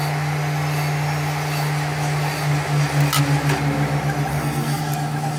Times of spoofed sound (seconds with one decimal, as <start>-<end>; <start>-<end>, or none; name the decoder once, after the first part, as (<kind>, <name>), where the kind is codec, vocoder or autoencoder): 4.3-4.8 (codec, SNAC)